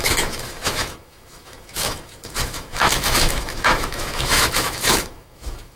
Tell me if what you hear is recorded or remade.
remade